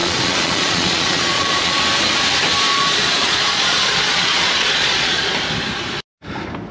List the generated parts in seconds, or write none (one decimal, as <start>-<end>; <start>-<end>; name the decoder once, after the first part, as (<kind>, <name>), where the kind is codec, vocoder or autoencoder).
0.0-1.8 (vocoder, Vocos); 2.7-5.3